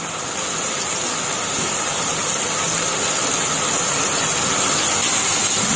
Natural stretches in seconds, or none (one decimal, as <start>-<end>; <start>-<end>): 0.0-5.8